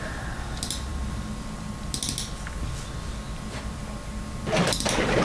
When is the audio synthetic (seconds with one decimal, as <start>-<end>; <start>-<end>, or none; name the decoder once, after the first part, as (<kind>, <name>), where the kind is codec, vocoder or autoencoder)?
none